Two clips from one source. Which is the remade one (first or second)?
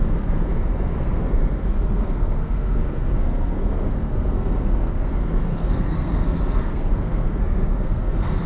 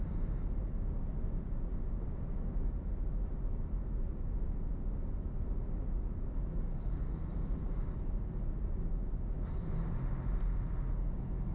first